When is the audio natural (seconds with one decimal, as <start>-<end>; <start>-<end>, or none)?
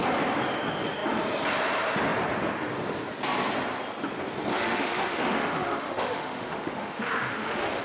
0.0-4.5